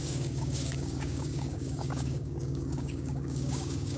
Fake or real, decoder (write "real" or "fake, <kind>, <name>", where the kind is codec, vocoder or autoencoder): fake, codec, DAC